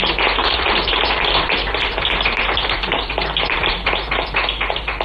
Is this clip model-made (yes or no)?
yes